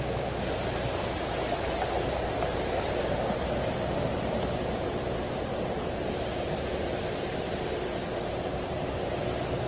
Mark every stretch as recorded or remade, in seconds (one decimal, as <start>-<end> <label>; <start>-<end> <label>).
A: 0.0-6.7 remade; 6.7-8.0 recorded; 8.0-9.7 remade